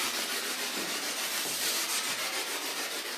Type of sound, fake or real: fake